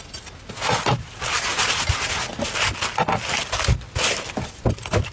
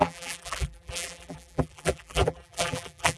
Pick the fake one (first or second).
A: second